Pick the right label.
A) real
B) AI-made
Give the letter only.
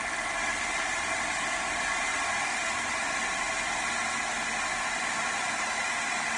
A